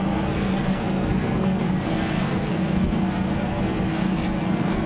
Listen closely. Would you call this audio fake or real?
fake